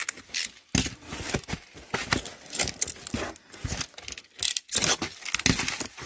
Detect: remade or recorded recorded